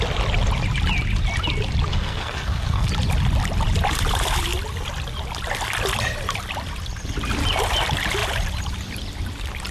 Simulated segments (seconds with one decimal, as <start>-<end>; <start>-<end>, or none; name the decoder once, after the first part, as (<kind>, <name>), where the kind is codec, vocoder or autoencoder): 1.9-2.9 (codec, SNAC)